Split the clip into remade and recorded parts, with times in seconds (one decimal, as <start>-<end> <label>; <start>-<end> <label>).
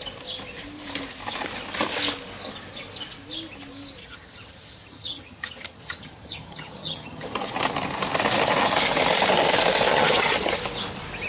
0.0-4.0 recorded; 4.0-7.5 remade; 7.5-9.9 recorded; 9.9-10.5 remade; 10.5-11.3 recorded